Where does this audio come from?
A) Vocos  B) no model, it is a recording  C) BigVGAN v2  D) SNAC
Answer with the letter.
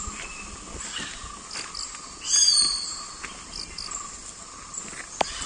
B